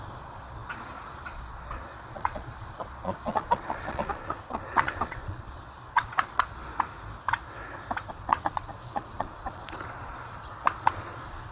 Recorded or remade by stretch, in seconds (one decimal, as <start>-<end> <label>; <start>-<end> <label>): 0.0-6.7 remade; 6.7-8.1 recorded; 8.1-11.5 remade